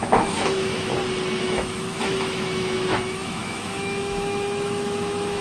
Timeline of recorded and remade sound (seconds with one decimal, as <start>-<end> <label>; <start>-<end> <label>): 0.0-0.9 remade; 0.9-1.4 recorded; 1.4-5.4 remade